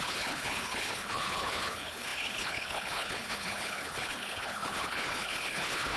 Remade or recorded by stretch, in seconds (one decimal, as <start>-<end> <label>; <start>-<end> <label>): 0.0-6.0 remade